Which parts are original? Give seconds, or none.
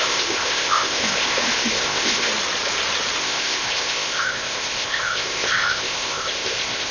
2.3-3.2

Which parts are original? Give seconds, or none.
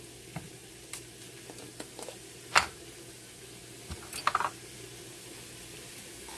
0.0-6.4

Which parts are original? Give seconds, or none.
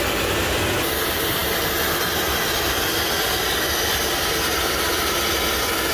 0.0-5.9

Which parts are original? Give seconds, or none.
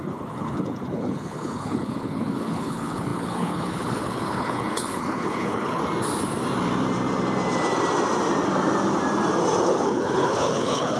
5.8-9.6